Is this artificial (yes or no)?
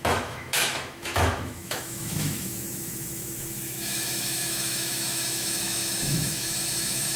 yes